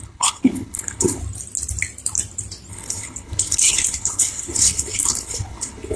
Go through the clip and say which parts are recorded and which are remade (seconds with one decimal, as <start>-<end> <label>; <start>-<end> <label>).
0.0-1.2 remade; 1.2-2.7 recorded; 2.7-6.0 remade

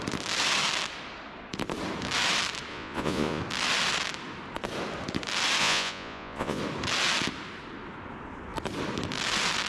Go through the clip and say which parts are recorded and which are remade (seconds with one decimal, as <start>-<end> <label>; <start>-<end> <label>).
0.0-2.7 recorded; 2.7-3.4 remade; 3.4-5.6 recorded; 5.6-6.6 remade; 6.6-9.7 recorded

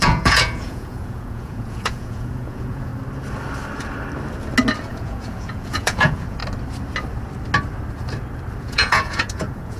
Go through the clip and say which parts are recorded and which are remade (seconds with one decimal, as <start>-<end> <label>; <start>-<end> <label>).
0.0-2.9 remade; 2.9-4.9 recorded; 4.9-6.4 remade; 6.4-8.6 recorded; 8.6-9.8 remade

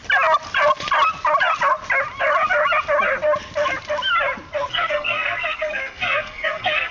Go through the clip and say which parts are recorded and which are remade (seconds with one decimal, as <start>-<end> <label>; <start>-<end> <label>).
0.0-4.7 recorded; 4.7-6.9 remade

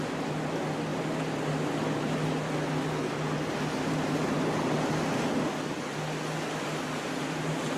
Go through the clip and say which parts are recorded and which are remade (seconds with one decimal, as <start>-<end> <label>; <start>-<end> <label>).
0.0-7.8 recorded